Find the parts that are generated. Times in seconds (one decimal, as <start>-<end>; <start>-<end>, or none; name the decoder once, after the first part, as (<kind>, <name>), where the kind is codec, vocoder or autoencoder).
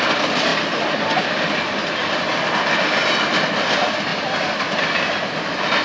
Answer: 4.1-4.8 (vocoder, BigVGAN v2)